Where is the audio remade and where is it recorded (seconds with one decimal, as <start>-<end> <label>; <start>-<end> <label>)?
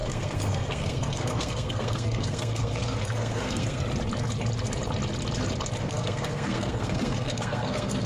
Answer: 0.0-3.8 remade; 3.8-5.8 recorded; 5.8-8.1 remade